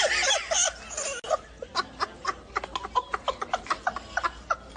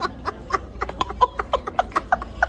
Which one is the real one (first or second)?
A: first